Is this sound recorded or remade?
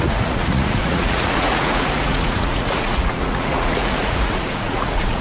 remade